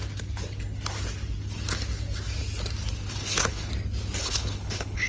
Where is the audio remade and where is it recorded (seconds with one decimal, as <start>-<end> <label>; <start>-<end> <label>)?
0.0-3.1 recorded; 3.1-3.7 remade; 3.7-4.2 recorded; 4.2-5.1 remade

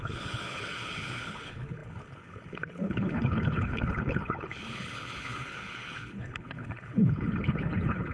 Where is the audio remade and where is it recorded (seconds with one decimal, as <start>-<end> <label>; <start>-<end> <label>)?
0.0-8.1 remade